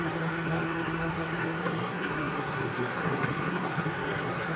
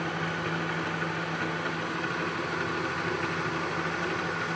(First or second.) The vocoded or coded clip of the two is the first